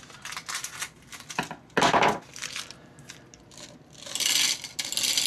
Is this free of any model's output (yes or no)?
yes